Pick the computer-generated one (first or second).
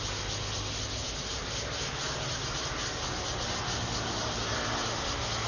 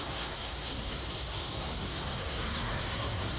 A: second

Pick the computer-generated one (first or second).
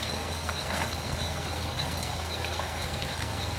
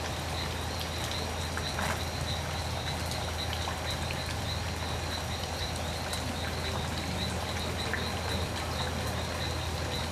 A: first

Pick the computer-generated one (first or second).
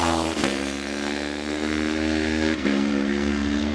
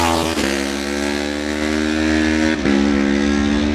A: first